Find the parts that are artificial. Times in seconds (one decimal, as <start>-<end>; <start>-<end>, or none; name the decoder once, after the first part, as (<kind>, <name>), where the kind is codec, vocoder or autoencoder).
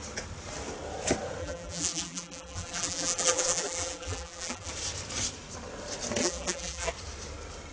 1.4-4.7 (vocoder, BigVGAN v2); 6.2-6.9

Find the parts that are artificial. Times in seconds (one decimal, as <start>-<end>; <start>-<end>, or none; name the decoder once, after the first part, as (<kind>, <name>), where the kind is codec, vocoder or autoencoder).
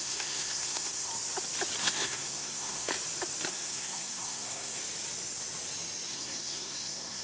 0.0-1.1 (codec, SNAC); 1.8-2.9; 3.5-4.8; 6.1-7.2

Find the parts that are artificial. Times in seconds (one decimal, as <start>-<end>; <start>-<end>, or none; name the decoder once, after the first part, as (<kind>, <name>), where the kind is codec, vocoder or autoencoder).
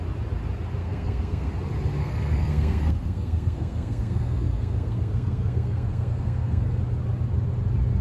0.8-1.5 (codec, SNAC); 2.0-6.8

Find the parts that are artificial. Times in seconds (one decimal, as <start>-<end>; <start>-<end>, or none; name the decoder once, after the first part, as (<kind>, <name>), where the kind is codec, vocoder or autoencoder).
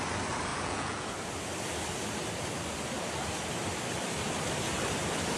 0.5-1.1 (vocoder, Vocos)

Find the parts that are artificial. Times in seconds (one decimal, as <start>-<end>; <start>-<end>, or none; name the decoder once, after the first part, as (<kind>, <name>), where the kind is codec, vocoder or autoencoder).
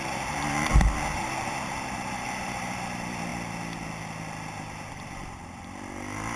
0.0-0.7 (vocoder, BigVGAN v2); 1.4-3.3; 4.9-6.4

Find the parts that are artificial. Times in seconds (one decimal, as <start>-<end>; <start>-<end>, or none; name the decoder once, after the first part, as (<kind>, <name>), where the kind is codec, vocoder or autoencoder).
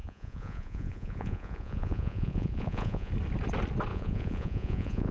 0.0-3.1 (vocoder, Vocos); 3.9-5.1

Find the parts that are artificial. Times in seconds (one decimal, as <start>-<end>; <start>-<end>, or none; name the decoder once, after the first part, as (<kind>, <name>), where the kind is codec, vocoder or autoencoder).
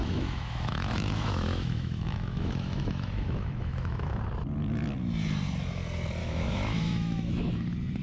0.0-4.2 (autoencoder, DAC-VAE); 6.2-7.5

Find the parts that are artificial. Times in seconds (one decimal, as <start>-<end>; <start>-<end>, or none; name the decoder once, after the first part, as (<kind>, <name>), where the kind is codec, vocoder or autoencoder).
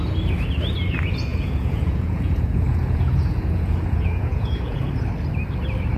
1.3-4.9 (vocoder, Vocos)